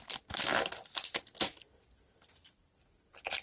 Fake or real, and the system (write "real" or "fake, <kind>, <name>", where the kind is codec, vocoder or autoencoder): real